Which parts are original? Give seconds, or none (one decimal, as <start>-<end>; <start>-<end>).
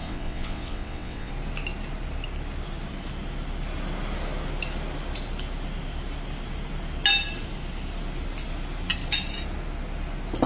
1.3-10.5